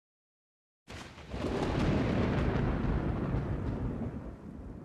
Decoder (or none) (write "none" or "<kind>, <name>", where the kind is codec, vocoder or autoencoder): none